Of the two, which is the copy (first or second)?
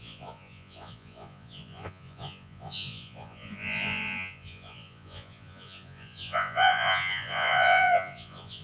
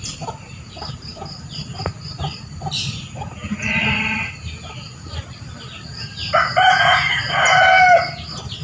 first